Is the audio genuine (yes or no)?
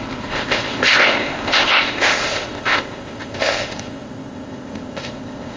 no